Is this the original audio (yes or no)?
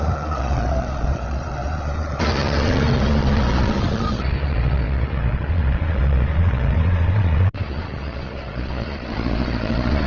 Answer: no